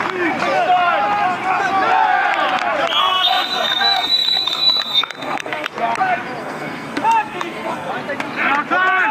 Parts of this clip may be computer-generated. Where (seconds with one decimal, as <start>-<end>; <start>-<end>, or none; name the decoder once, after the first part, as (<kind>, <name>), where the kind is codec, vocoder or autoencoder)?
3.0-5.7 (codec, SNAC); 6.4-7.9